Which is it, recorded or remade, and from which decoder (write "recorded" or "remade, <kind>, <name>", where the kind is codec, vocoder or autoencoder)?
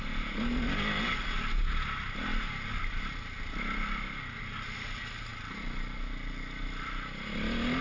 recorded